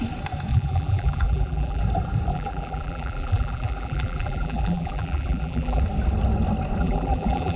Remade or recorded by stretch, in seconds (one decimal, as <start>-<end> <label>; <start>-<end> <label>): 0.0-0.5 recorded; 0.5-1.8 remade; 1.8-2.3 recorded; 2.3-5.8 remade; 5.8-6.8 recorded; 6.8-7.6 remade